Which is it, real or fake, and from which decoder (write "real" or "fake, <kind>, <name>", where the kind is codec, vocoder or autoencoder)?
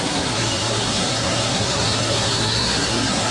fake, codec, SNAC